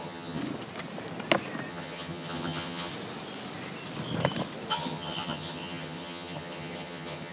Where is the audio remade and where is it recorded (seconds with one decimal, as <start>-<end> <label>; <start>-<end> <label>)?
0.0-0.4 remade; 0.4-1.7 recorded; 1.7-2.9 remade; 2.9-4.7 recorded; 4.7-7.3 remade